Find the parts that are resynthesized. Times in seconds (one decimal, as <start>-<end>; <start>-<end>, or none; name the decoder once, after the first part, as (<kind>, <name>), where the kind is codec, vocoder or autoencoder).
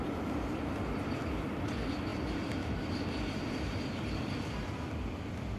none